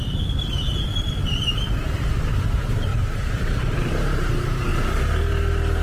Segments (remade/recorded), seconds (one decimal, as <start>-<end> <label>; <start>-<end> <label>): 0.0-2.9 recorded; 2.9-4.3 remade; 4.3-4.7 recorded; 4.7-5.3 remade; 5.3-5.8 recorded